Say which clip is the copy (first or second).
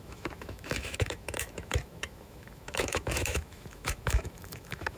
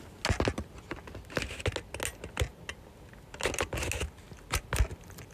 first